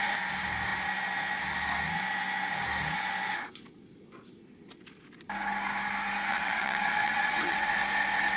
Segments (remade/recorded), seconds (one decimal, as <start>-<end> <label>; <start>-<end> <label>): 0.0-6.3 recorded; 6.3-7.7 remade; 7.7-8.4 recorded